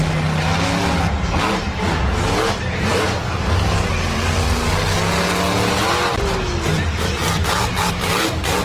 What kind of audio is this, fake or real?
real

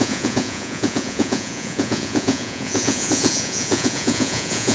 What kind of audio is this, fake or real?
fake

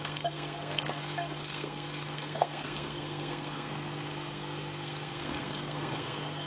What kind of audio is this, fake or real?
fake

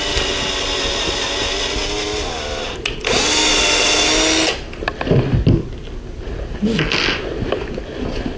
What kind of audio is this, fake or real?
real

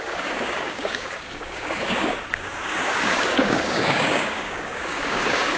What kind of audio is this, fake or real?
fake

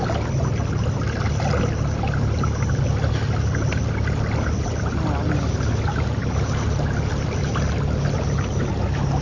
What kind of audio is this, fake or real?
real